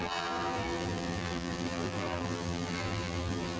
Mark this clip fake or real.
fake